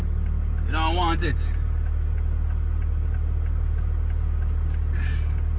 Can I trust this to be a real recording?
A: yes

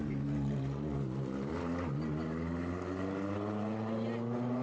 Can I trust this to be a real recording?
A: yes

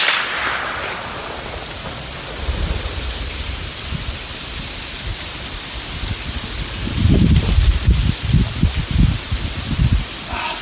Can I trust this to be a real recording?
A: yes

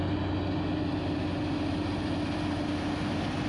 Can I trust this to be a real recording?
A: yes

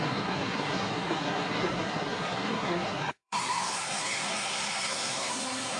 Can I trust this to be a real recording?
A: no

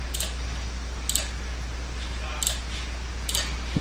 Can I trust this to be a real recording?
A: yes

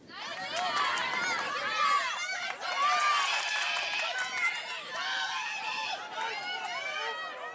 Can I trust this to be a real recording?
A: yes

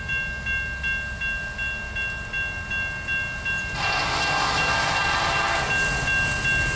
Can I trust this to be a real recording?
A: yes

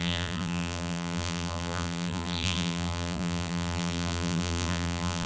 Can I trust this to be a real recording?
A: no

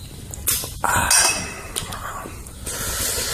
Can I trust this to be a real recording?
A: yes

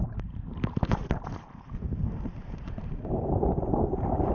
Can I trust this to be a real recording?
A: no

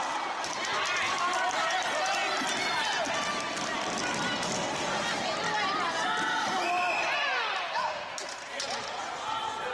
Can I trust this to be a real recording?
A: yes